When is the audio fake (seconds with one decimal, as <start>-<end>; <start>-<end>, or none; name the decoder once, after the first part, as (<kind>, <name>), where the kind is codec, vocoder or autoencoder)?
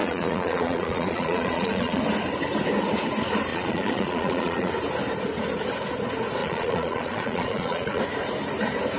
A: 0.0-2.0 (vocoder, Vocos); 3.5-4.7; 6.4-8.0